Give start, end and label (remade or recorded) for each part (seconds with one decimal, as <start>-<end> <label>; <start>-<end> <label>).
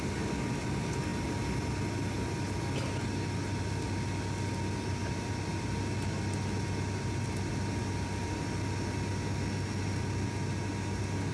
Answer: 0.0-11.3 recorded